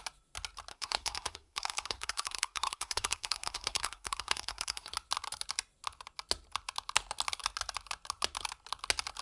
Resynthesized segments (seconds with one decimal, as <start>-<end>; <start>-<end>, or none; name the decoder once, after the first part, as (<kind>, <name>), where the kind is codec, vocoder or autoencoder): 0.7-4.9 (codec, SNAC)